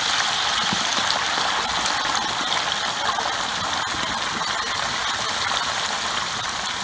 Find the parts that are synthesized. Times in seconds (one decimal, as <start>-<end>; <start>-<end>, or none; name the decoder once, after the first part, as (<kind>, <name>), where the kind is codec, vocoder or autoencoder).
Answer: none